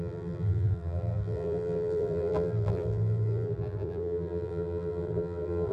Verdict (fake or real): fake